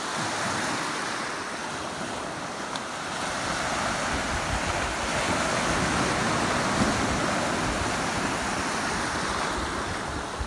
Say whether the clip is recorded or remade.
recorded